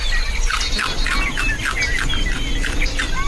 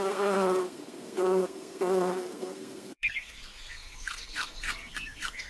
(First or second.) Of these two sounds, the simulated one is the second